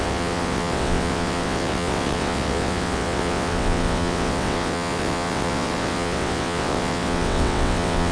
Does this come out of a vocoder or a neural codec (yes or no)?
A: yes